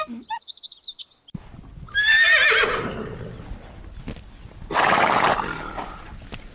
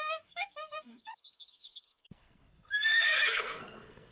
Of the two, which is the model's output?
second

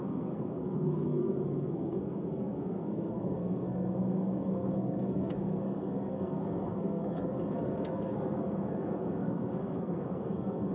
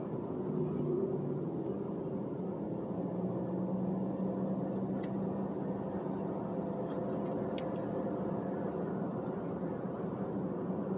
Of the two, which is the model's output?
first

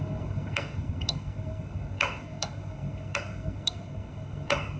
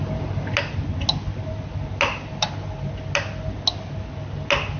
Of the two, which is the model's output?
first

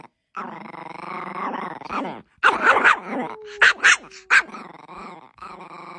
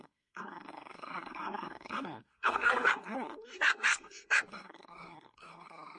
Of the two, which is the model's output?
second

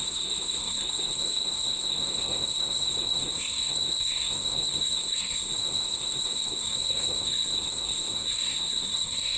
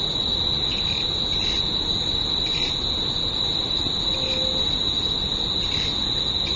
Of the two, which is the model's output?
first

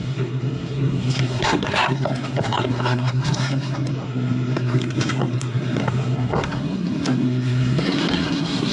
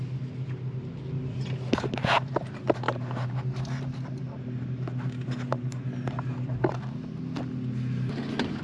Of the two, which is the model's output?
first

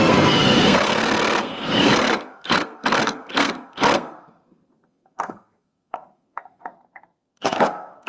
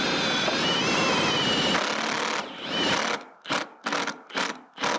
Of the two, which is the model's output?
first